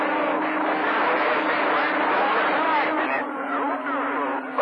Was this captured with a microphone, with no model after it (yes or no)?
yes